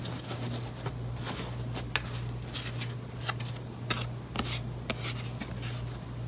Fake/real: real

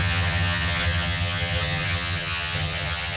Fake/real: fake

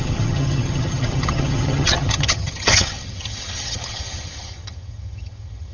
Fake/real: fake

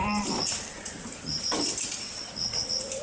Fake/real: real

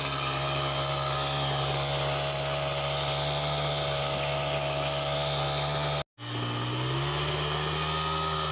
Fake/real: real